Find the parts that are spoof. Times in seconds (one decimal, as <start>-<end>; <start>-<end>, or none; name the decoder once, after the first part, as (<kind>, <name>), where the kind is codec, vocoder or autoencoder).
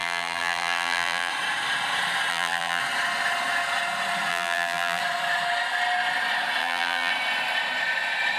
0.0-1.3 (vocoder, BigVGAN v2); 2.3-2.8; 4.3-5.0; 6.6-7.1